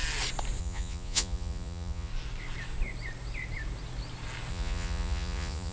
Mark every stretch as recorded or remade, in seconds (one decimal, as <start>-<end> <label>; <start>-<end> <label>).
0.0-0.6 recorded; 0.6-2.1 remade; 2.1-4.5 recorded; 4.5-5.7 remade